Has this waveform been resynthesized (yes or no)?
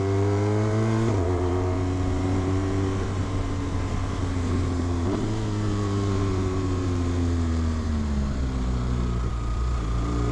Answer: yes